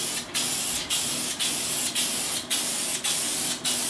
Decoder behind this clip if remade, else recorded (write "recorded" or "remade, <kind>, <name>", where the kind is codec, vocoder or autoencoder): recorded